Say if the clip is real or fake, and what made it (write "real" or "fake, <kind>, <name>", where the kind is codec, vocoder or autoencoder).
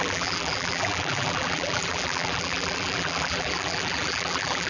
fake, vocoder, BigVGAN v2